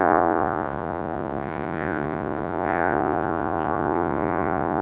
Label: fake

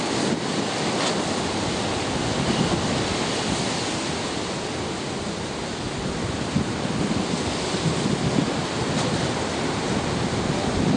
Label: real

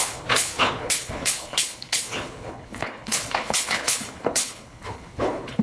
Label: fake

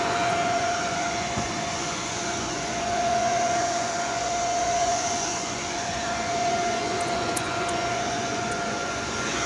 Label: fake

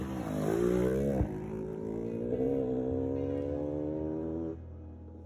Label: real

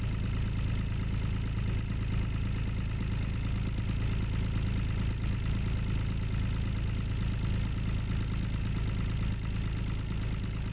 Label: real